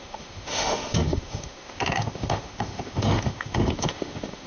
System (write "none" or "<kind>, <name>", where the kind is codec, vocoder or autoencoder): autoencoder, DAC-VAE